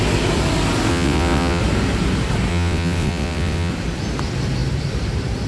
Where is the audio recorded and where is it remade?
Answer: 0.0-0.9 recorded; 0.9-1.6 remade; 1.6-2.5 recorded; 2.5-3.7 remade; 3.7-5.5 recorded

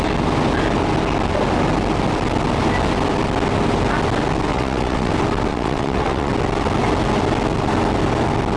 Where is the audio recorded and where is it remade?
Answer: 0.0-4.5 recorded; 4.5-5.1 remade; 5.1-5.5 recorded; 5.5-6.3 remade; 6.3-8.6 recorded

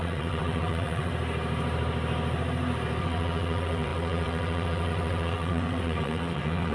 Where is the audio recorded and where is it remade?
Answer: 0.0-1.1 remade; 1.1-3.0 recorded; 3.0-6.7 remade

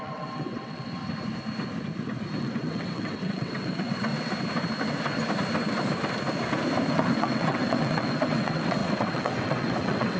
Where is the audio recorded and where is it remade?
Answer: 0.0-1.0 remade; 1.0-2.4 recorded; 2.4-4.1 remade; 4.1-6.9 recorded; 6.9-10.2 remade

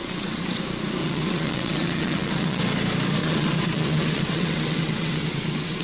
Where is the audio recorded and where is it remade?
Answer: 0.0-0.6 remade; 0.6-1.0 recorded; 1.0-2.6 remade; 2.6-3.2 recorded; 3.2-5.8 remade

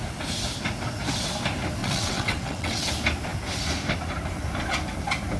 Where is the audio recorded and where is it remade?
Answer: 0.0-1.8 recorded; 1.8-2.9 remade; 2.9-5.4 recorded

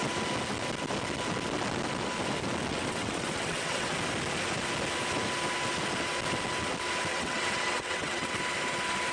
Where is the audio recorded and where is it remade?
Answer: 0.0-2.7 recorded; 2.7-3.9 remade; 3.9-7.1 recorded; 7.1-8.4 remade; 8.4-9.1 recorded

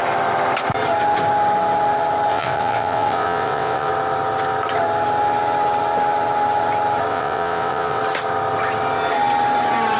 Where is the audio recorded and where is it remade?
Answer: 0.0-2.3 recorded; 2.3-3.9 remade; 3.9-7.1 recorded; 7.1-8.0 remade; 8.0-10.0 recorded